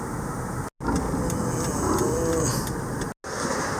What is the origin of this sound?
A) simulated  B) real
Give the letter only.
B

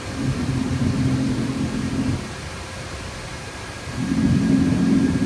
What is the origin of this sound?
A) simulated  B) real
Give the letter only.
A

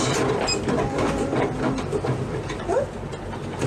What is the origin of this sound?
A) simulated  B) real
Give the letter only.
A